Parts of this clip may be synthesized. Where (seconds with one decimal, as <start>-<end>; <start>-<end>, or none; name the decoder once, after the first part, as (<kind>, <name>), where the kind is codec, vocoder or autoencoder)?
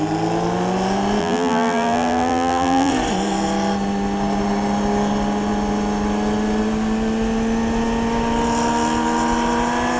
1.2-2.9 (vocoder, BigVGAN v2)